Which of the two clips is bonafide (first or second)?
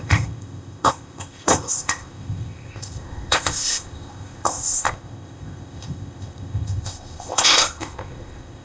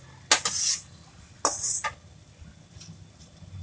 second